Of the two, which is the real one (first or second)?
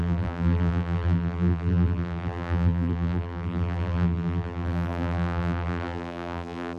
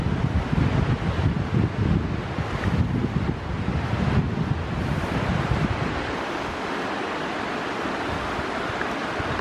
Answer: second